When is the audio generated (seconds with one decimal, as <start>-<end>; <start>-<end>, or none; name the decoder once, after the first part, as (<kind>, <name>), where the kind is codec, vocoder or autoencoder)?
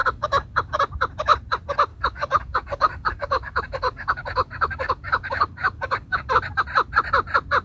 0.0-0.8 (codec, DAC); 1.9-6.3